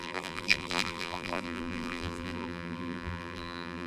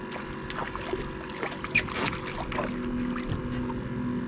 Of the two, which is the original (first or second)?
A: second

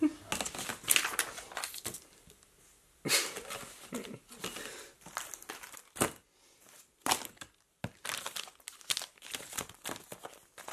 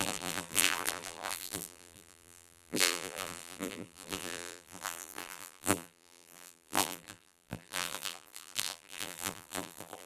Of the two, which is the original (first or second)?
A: first